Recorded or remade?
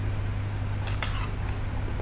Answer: recorded